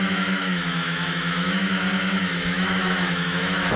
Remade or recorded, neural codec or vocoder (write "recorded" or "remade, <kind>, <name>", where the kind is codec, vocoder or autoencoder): remade, autoencoder, DAC-VAE